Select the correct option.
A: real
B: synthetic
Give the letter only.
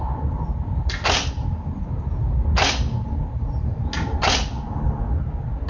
A